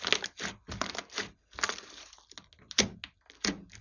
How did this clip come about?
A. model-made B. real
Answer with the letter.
B